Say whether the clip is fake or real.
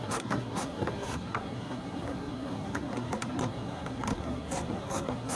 fake